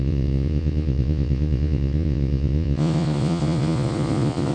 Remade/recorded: remade